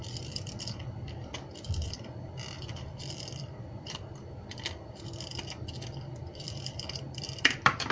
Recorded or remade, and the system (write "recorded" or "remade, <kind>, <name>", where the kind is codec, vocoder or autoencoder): remade, vocoder, BigVGAN v2